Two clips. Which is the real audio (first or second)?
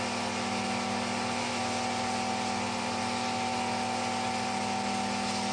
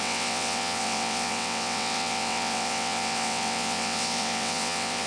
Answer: first